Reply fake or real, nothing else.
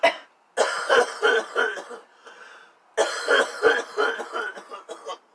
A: real